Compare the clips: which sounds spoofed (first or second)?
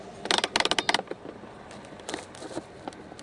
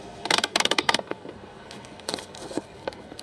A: second